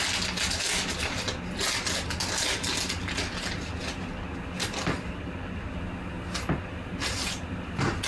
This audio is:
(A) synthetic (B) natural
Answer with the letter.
B